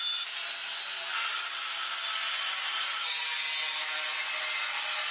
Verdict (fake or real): real